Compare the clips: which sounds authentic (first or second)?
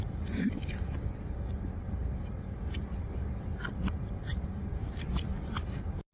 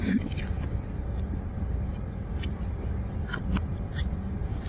second